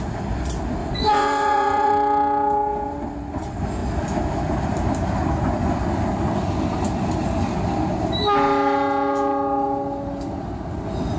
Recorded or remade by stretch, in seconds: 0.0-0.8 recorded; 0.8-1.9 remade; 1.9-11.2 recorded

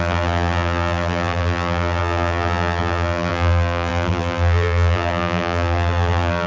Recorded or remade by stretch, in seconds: 0.0-6.5 remade

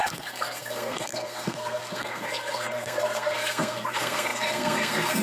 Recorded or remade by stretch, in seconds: 0.0-5.2 remade

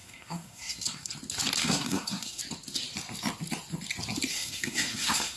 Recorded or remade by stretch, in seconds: 0.0-1.1 remade; 1.1-1.6 recorded; 1.6-2.4 remade; 2.4-4.3 recorded; 4.3-5.4 remade

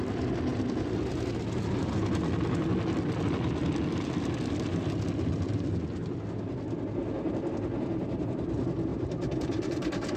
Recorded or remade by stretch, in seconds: 0.0-8.9 recorded; 8.9-10.2 remade

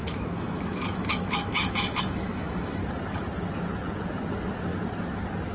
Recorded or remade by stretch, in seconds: 0.0-2.8 remade; 2.8-5.5 recorded

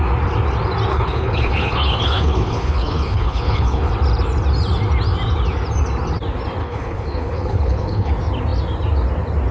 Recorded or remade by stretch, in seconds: 0.0-0.9 recorded; 0.9-3.9 remade; 3.9-6.6 recorded; 6.6-8.1 remade; 8.1-9.5 recorded